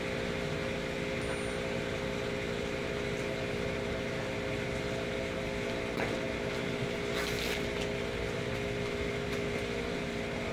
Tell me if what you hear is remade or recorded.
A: recorded